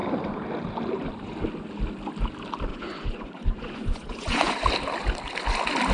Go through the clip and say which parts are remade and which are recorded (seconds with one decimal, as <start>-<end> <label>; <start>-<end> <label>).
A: 0.0-2.7 recorded; 2.7-4.5 remade; 4.5-5.9 recorded